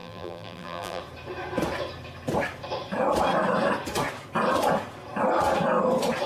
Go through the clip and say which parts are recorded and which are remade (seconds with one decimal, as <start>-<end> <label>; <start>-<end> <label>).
0.0-1.0 remade; 1.0-6.3 recorded